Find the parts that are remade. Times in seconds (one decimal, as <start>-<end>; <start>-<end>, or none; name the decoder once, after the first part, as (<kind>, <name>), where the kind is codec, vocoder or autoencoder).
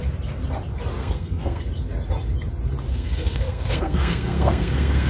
1.0-1.6 (codec, SNAC); 2.9-5.1